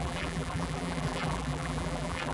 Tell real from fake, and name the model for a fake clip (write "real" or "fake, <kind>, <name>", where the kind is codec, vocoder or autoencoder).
fake, vocoder, BigVGAN v2